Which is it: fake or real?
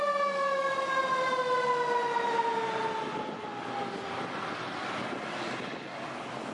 real